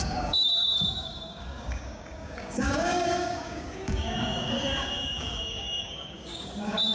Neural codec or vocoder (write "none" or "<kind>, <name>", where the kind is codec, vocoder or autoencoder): codec, DAC